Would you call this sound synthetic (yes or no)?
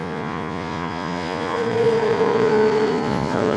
yes